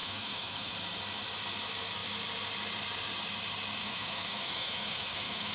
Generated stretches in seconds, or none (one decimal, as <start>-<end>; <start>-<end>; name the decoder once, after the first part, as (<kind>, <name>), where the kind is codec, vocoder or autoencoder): 0.0-0.7 (autoencoder, DAC-VAE); 3.8-5.5